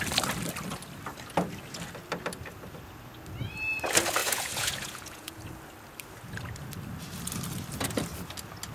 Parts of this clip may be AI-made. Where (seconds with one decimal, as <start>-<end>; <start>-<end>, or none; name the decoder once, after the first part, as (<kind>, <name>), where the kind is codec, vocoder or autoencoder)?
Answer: 4.2-5.4 (vocoder, Vocos)

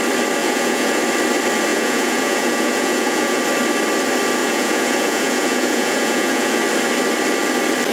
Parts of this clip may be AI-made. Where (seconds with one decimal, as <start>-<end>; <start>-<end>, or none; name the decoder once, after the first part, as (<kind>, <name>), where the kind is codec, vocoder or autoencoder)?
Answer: 0.4-1.0 (vocoder, Vocos); 1.7-3.4; 4.4-6.6

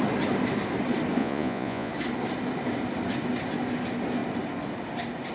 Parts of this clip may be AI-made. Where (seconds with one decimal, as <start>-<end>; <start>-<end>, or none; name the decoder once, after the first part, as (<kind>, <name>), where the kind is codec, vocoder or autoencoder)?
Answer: 1.2-1.9 (vocoder, Vocos)

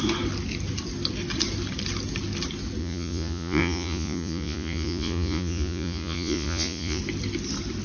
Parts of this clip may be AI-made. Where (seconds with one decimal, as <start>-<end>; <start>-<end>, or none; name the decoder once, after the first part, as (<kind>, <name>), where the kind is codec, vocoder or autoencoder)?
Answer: 2.8-7.0 (vocoder, Vocos)

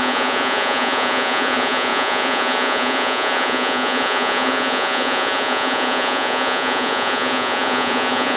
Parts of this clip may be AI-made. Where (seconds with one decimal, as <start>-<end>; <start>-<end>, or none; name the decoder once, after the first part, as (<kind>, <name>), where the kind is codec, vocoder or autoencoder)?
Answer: 0.0-8.4 (vocoder, Vocos)

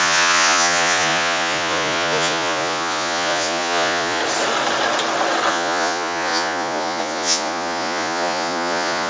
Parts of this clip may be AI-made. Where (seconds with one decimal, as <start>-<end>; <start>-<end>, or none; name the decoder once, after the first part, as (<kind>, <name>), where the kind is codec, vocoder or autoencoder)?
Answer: 0.0-4.2 (vocoder, Vocos); 5.5-9.1